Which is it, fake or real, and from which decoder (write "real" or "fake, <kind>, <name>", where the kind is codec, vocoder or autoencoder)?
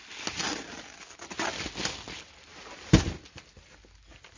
real